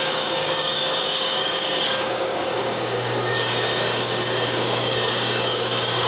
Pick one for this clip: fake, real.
fake